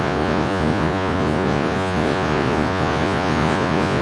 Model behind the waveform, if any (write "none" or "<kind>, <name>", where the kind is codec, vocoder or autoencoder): vocoder, Vocos